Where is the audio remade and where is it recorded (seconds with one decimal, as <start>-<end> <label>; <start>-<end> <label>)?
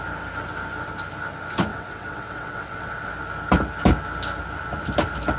0.0-1.7 recorded; 1.7-3.1 remade; 3.1-5.4 recorded